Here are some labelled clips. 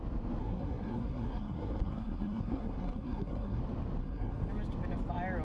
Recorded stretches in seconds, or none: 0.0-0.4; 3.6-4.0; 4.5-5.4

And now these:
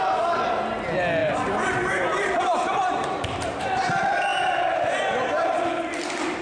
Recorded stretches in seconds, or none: 0.0-1.2; 3.6-4.3; 5.1-6.4

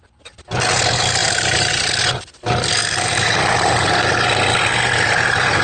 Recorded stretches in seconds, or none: 0.0-1.2; 1.7-2.8; 4.1-5.6

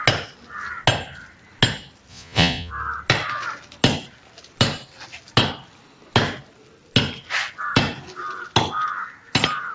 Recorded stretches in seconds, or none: 0.0-2.1; 2.7-9.7

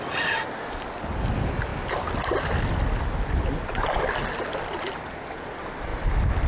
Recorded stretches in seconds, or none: 0.0-6.5